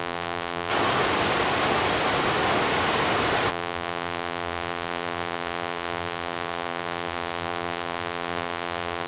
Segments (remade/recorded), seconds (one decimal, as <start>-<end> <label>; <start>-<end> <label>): 0.0-0.7 remade; 0.7-3.5 recorded; 3.5-9.1 remade